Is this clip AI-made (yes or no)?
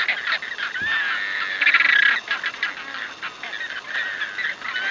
no